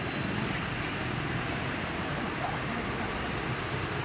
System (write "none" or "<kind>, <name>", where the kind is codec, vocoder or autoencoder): none